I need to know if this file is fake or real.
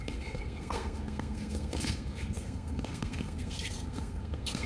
fake